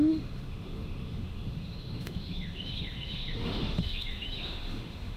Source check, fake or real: fake